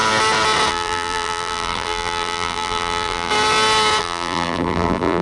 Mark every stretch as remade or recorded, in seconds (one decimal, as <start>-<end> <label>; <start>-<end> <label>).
0.0-0.7 recorded; 0.7-3.3 remade; 3.3-4.0 recorded; 4.0-5.2 remade